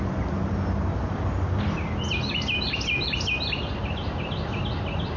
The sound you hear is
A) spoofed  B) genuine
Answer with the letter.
B